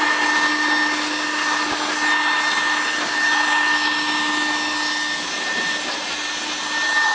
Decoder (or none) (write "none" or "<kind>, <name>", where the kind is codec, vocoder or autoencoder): none